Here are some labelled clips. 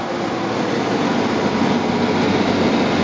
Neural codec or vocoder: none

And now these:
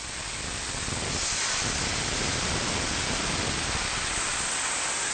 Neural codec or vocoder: none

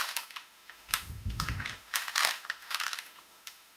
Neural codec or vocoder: autoencoder, DAC-VAE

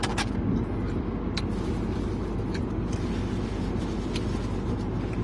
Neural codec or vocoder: none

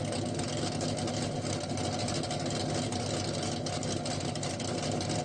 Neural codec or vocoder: none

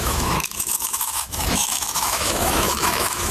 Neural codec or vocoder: autoencoder, DAC-VAE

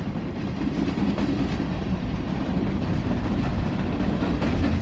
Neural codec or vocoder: none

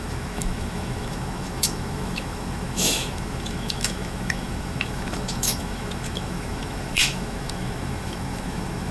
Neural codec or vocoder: autoencoder, DAC-VAE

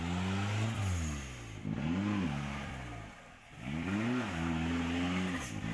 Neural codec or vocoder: none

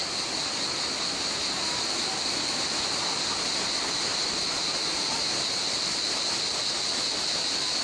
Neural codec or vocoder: none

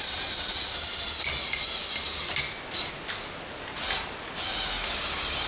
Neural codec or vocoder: none